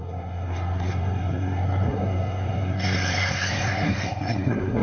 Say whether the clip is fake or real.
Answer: fake